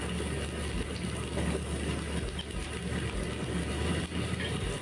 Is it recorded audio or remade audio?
recorded